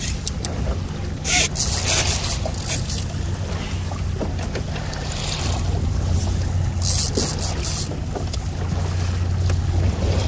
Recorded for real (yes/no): yes